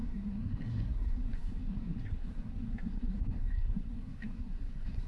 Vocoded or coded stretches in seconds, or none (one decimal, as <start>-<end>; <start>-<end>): 0.0-5.1